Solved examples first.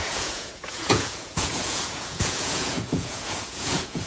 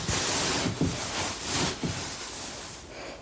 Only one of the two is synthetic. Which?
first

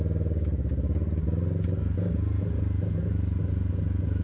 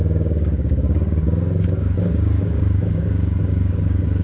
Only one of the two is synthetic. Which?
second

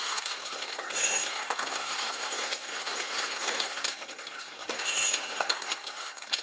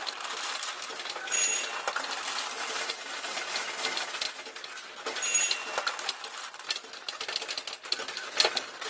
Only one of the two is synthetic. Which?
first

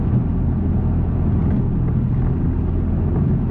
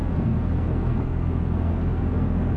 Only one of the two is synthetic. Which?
second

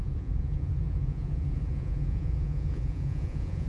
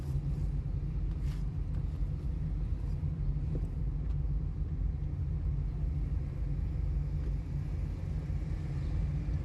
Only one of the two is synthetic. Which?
first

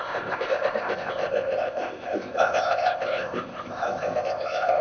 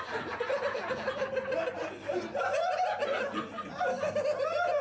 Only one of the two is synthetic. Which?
first